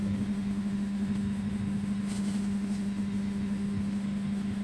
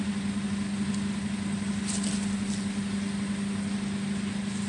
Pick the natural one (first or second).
second